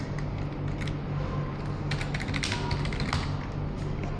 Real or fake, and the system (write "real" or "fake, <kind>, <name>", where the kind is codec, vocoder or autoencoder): real